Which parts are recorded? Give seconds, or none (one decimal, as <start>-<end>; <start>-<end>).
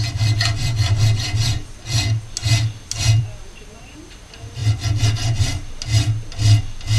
0.0-7.0